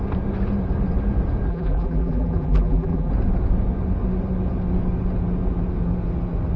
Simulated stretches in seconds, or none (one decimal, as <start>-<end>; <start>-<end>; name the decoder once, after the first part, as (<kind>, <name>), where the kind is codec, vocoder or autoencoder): 1.5-3.1 (vocoder, BigVGAN v2)